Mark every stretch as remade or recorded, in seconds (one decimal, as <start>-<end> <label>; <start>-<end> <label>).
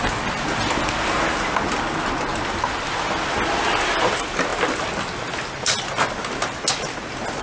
0.0-7.4 recorded